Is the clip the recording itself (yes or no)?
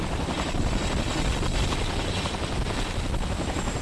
yes